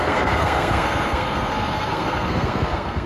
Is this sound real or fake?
fake